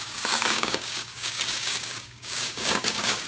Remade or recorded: remade